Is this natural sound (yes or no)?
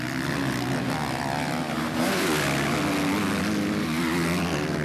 yes